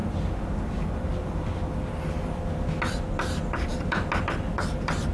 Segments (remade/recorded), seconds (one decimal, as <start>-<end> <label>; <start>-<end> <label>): 0.0-5.1 recorded